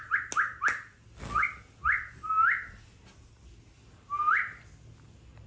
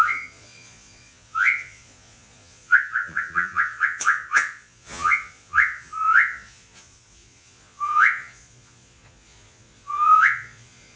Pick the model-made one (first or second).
second